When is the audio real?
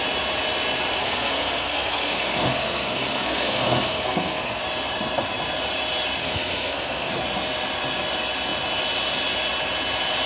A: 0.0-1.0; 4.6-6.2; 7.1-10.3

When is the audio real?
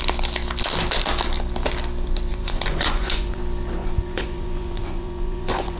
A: 0.0-2.3; 3.4-3.8